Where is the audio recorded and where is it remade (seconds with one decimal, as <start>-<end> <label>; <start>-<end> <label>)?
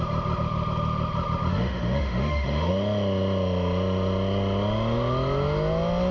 0.0-1.5 recorded; 1.5-2.7 remade; 2.7-6.1 recorded